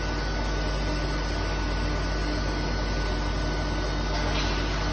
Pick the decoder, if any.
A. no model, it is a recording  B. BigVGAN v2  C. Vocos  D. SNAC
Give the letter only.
A